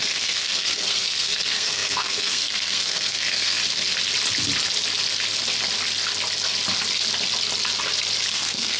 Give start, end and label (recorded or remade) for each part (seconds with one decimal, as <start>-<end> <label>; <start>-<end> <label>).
0.0-3.6 remade; 3.6-8.3 recorded; 8.3-8.8 remade